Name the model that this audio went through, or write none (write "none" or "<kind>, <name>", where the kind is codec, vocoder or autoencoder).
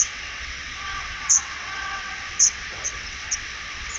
vocoder, WaveNeXt